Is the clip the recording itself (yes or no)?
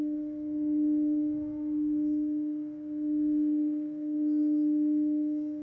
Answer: no